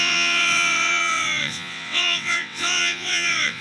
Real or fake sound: fake